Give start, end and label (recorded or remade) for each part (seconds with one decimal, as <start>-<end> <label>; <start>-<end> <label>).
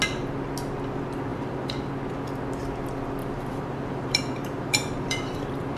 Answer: 0.0-1.3 recorded; 1.3-1.9 remade; 1.9-3.2 recorded; 3.2-5.8 remade